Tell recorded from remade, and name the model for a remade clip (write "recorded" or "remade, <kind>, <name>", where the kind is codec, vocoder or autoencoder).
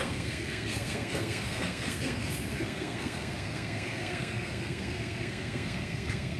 remade, codec, SNAC